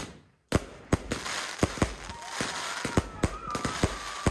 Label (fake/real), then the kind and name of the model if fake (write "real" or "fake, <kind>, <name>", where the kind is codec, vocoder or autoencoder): real